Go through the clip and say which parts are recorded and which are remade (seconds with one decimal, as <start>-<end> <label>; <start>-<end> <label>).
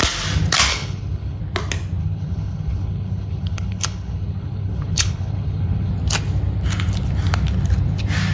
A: 0.0-0.7 recorded; 0.7-1.4 remade; 1.4-2.0 recorded; 2.0-5.9 remade; 5.9-8.3 recorded